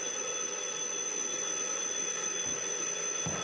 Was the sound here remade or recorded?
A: recorded